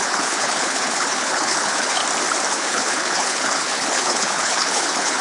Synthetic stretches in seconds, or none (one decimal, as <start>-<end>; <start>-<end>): 0.0-2.0; 2.5-5.2